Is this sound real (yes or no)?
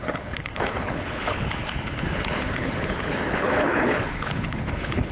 no